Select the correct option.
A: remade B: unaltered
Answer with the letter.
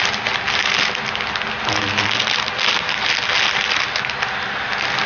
B